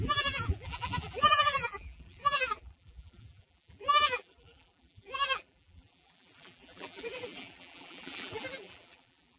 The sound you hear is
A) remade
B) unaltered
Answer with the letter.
A